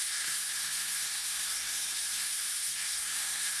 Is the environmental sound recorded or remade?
remade